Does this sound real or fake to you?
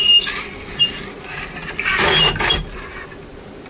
real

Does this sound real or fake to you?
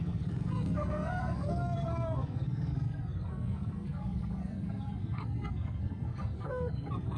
fake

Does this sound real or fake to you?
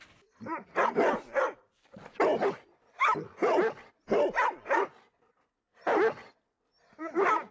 real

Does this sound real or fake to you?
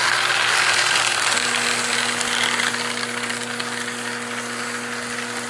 real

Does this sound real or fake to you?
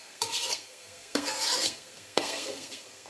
fake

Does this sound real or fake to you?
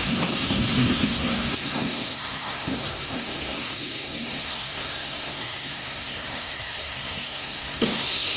fake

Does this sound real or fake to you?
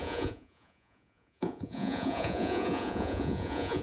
fake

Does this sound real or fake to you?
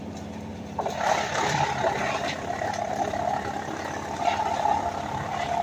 fake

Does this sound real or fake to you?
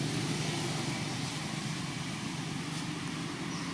real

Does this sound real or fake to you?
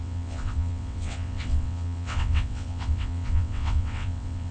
fake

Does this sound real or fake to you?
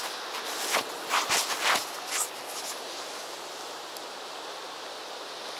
real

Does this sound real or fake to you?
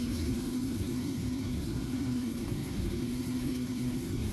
fake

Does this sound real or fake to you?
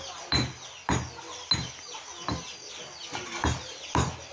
real